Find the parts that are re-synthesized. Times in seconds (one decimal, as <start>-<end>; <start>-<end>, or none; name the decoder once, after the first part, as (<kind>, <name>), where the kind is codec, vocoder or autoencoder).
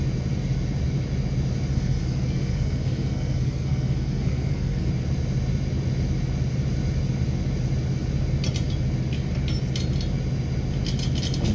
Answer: 1.7-4.9 (codec, SNAC)